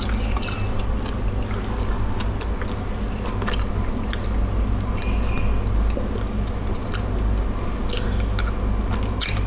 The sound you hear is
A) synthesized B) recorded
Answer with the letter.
B